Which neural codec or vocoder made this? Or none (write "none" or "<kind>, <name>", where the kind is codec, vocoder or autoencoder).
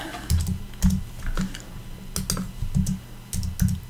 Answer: none